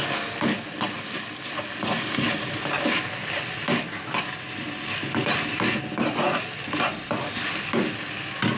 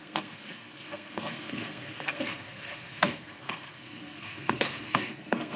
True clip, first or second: first